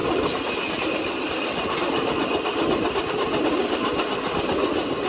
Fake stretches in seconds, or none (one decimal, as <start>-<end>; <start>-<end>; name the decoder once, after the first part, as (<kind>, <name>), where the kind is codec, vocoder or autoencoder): none